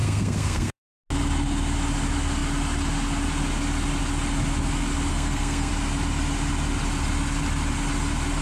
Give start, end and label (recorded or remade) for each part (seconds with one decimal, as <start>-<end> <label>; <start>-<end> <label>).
0.0-0.8 remade; 0.8-5.1 recorded; 5.1-5.7 remade; 5.7-8.4 recorded